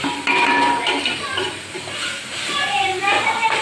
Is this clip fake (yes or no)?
yes